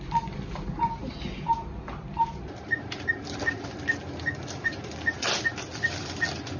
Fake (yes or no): yes